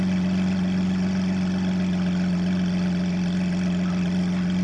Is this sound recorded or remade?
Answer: recorded